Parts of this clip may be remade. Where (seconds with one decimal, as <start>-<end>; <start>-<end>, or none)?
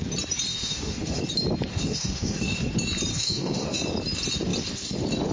0.5-1.2; 1.7-2.7; 3.1-3.8